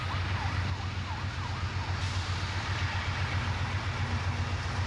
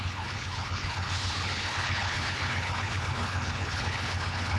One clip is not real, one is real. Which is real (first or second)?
first